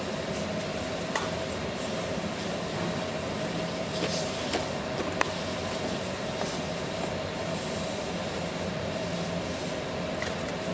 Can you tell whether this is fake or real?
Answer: real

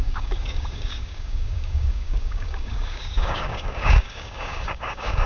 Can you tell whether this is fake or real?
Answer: fake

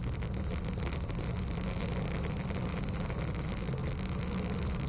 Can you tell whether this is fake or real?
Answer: real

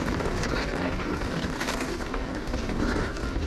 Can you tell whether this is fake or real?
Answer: fake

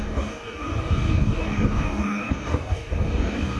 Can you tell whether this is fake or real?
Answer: fake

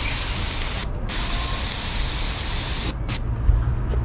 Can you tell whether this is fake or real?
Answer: real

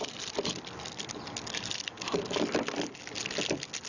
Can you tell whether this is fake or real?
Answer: real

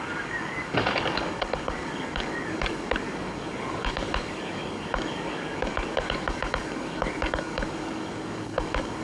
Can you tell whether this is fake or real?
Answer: fake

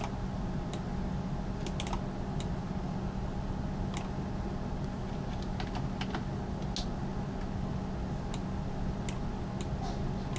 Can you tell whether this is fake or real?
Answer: real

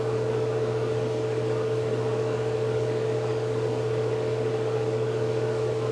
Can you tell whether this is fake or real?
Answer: fake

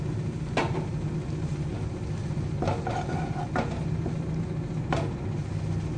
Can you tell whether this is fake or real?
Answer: real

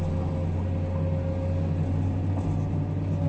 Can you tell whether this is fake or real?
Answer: real